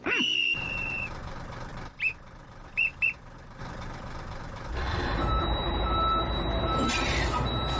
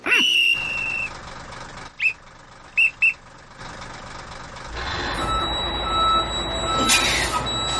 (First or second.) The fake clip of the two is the first